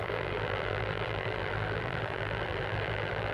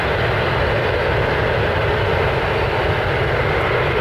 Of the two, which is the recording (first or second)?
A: second